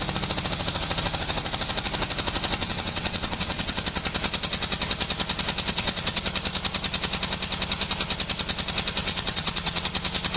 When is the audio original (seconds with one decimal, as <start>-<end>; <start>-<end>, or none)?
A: 0.0-2.6; 3.7-5.7; 6.2-9.0; 9.8-10.4